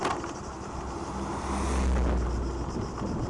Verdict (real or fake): real